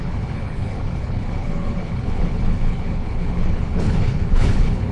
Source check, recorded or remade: remade